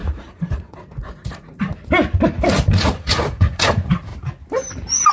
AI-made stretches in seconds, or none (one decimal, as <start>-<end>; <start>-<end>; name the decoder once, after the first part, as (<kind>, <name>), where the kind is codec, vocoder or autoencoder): 0.0-1.7 (vocoder, Vocos); 2.7-4.1